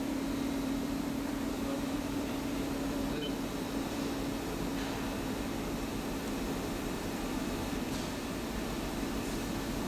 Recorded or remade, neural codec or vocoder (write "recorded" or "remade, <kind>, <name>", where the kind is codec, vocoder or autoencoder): remade, vocoder, BigVGAN v2